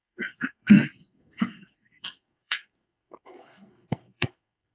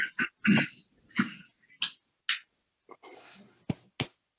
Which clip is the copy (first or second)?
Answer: first